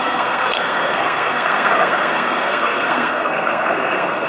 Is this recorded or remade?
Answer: remade